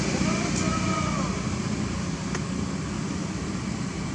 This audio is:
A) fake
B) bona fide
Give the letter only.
B